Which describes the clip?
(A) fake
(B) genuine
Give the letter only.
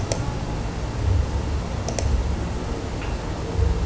B